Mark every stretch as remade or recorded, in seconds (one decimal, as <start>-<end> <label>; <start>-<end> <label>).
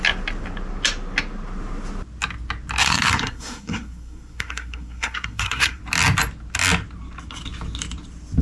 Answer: 0.0-2.8 recorded; 2.8-5.8 remade; 5.8-8.4 recorded